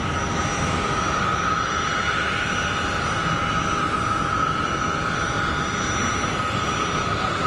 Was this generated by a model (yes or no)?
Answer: no